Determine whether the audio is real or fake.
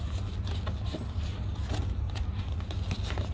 real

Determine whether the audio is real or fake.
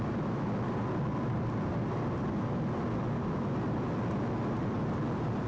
real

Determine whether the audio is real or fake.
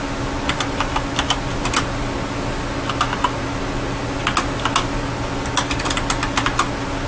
real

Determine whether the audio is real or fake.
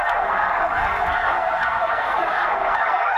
fake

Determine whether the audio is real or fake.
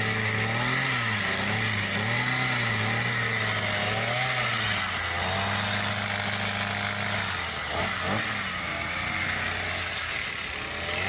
real